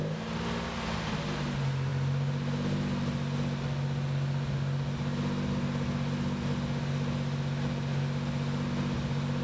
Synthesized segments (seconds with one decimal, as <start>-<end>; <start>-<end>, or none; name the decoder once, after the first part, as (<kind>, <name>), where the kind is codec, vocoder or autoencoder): none